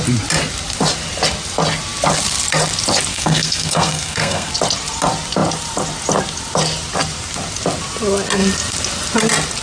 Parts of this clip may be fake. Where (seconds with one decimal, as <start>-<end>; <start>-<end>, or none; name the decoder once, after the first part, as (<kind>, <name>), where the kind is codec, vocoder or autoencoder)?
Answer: 3.1-4.5 (codec, SNAC)